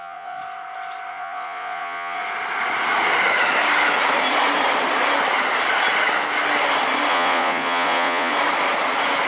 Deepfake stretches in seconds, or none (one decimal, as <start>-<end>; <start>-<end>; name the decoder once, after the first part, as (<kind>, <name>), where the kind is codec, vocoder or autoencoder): 0.0-0.4 (vocoder, Vocos); 1.1-2.2; 7.1-8.3